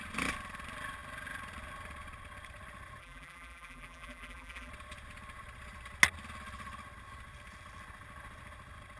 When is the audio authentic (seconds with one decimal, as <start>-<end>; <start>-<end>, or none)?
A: 0.0-3.0; 4.7-9.0

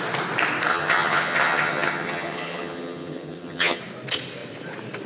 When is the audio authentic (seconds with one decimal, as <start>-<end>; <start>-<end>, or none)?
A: 0.0-0.7; 3.8-5.1

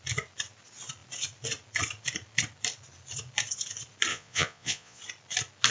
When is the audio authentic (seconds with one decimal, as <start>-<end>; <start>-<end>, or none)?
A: 0.0-4.1; 5.0-5.7

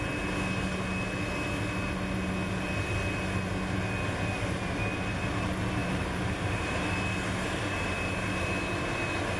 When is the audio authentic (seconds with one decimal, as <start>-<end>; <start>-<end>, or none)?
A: 0.0-5.8; 7.0-9.4

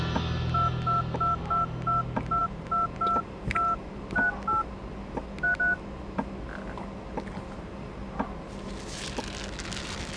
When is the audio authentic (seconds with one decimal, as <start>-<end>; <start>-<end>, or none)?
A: 0.0-10.2

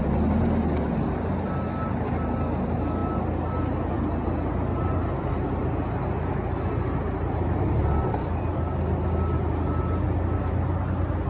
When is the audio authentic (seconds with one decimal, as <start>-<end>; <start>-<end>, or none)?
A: 0.0-11.3

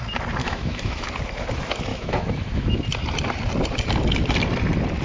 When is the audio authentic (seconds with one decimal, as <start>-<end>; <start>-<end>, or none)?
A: 0.0-0.4; 1.1-1.9; 2.8-5.0